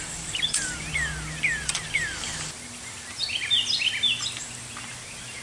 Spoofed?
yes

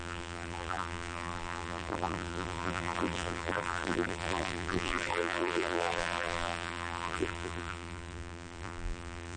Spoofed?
yes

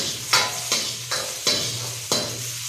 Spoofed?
yes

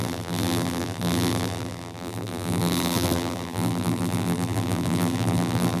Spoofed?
yes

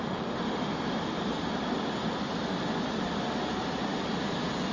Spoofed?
no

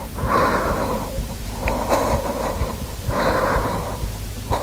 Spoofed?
yes